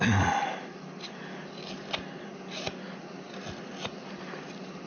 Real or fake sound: real